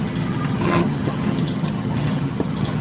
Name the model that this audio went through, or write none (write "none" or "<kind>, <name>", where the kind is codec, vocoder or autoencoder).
vocoder, HiFi-GAN